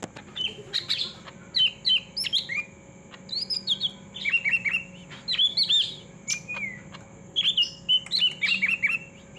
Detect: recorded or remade recorded